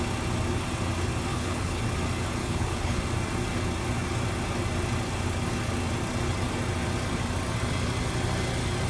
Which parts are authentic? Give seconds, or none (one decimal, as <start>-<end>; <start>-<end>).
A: 0.0-1.3; 1.8-2.4; 3.0-8.9